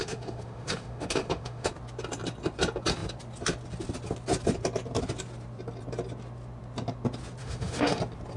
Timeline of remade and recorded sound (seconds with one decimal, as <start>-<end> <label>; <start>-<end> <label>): 0.0-1.7 remade; 1.7-7.4 recorded; 7.4-8.0 remade; 8.0-8.4 recorded